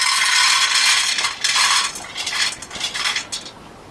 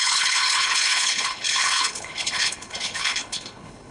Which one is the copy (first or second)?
second